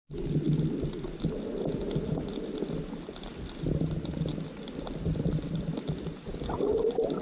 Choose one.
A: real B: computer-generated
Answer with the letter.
A